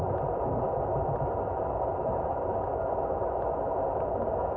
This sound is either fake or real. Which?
real